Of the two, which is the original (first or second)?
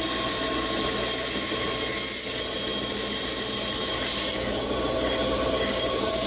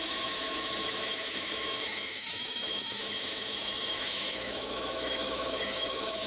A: first